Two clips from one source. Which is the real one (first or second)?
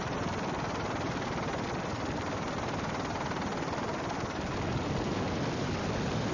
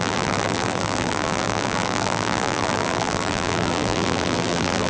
first